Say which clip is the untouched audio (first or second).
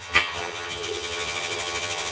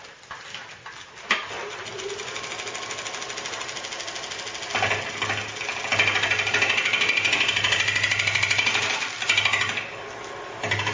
second